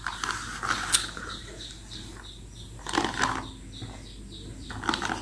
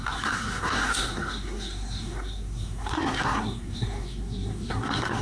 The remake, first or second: second